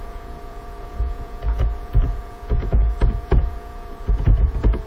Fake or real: fake